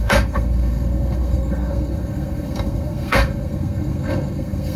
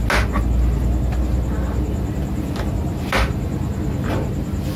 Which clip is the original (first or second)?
second